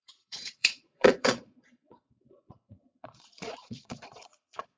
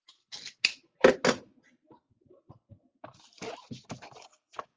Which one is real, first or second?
second